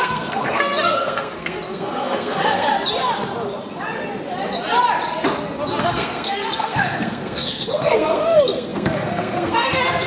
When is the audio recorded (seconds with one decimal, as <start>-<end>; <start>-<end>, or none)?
2.7-5.8